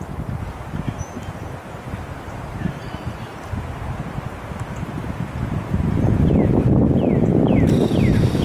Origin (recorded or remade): recorded